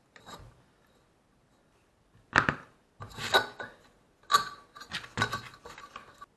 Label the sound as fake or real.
real